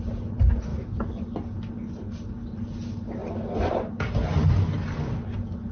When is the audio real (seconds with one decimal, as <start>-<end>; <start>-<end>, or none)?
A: 0.0-5.7